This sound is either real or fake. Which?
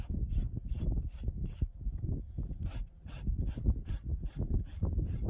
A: real